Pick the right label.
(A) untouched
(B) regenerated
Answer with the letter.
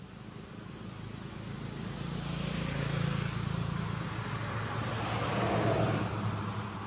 A